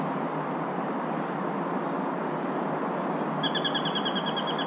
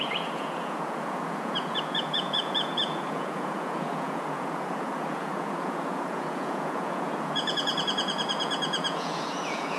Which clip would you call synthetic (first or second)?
second